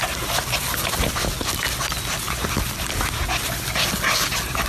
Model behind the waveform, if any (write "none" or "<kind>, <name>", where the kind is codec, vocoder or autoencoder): none